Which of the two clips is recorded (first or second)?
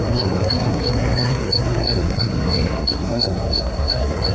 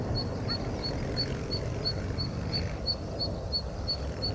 second